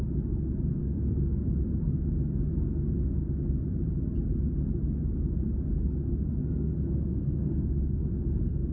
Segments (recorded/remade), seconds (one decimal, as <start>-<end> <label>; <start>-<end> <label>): 0.0-0.8 recorded; 0.8-1.5 remade; 1.5-6.4 recorded; 6.4-8.0 remade; 8.0-8.7 recorded

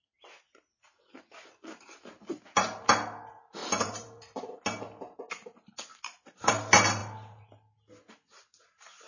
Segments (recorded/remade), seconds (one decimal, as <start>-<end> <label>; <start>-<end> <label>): 0.0-3.6 recorded; 3.6-4.4 remade; 4.4-5.9 recorded; 5.9-6.5 remade; 6.5-9.1 recorded

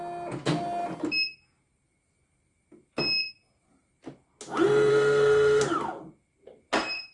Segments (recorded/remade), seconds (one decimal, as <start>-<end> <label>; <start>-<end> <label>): 0.0-4.9 recorded; 4.9-5.6 remade; 5.6-7.1 recorded

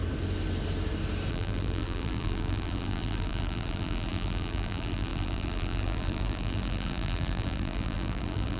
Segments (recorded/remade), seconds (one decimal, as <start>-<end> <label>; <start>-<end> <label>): 0.0-1.3 recorded; 1.3-8.6 remade

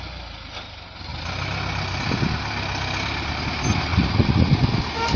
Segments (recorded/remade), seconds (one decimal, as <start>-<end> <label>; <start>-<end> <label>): 0.0-3.9 recorded; 3.9-4.5 remade; 4.5-5.2 recorded

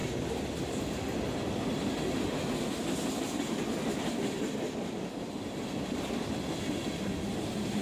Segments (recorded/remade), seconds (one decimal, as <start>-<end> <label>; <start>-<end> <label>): 0.0-7.8 recorded

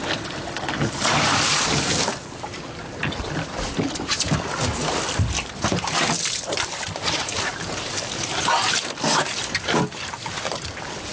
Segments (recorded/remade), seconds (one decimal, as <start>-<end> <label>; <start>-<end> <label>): 0.0-11.1 recorded

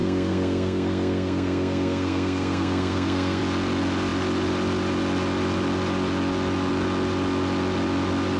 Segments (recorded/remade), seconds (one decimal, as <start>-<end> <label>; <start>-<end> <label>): 0.0-3.4 remade; 3.4-8.4 recorded